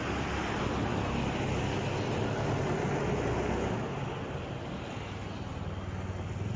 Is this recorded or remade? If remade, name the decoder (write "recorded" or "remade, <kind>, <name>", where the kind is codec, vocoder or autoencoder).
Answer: recorded